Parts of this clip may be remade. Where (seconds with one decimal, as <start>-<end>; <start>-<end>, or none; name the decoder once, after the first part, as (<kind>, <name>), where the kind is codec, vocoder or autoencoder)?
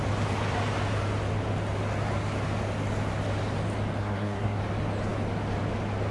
4.0-4.6 (codec, SNAC)